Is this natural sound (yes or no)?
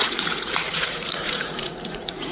no